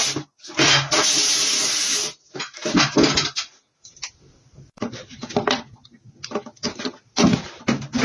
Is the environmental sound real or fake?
real